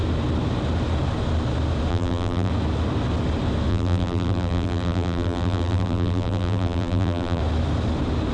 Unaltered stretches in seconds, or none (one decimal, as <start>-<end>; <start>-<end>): 0.0-1.9; 2.5-3.7; 7.4-8.3